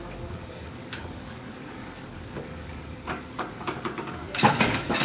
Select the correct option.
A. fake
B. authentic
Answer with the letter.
A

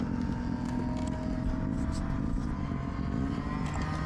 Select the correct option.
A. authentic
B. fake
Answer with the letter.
A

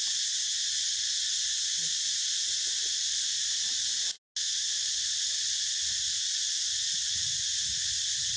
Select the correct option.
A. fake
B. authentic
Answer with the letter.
B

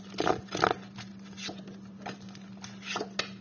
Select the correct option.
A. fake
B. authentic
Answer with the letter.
B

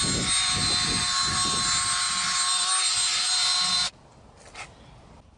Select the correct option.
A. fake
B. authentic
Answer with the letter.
B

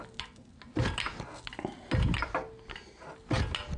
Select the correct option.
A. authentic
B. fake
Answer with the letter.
A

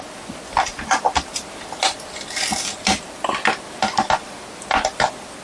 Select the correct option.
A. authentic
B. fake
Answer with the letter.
A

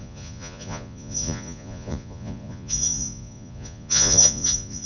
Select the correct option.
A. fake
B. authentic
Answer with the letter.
A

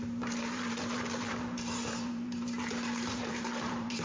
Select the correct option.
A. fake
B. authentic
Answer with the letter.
A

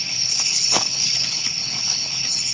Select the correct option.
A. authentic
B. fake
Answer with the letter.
B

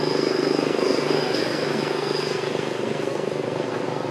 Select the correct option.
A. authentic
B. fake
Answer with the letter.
B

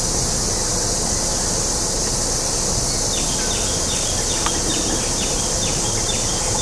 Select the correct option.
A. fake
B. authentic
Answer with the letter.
B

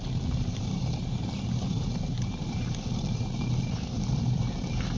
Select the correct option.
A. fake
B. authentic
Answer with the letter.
A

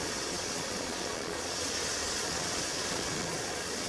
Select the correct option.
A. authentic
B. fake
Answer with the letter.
B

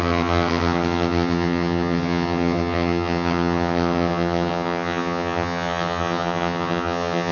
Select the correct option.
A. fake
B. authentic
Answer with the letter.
A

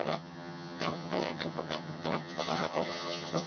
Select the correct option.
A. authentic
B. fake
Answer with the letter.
B